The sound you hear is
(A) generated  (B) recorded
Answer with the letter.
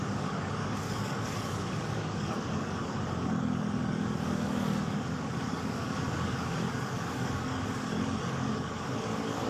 A